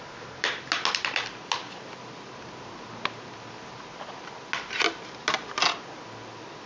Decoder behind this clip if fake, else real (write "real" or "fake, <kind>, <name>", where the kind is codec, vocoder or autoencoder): real